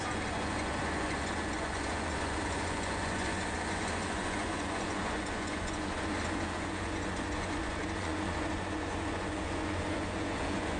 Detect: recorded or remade remade